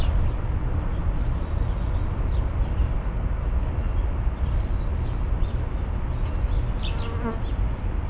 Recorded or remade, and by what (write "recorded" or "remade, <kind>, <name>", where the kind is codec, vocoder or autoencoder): recorded